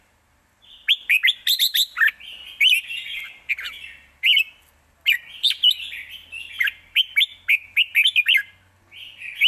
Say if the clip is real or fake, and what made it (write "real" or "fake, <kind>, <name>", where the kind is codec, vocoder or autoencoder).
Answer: real